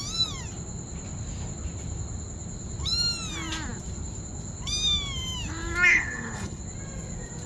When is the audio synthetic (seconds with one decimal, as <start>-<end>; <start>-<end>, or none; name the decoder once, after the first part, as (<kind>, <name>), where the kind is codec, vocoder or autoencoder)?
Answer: 5.9-6.6 (codec, HILCodec)